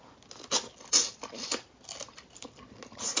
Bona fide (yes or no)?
yes